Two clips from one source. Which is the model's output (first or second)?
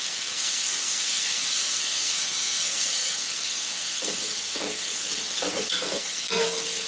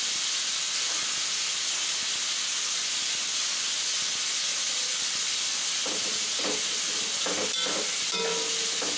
first